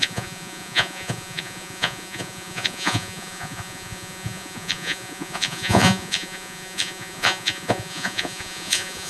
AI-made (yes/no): yes